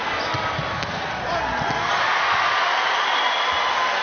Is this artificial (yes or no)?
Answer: no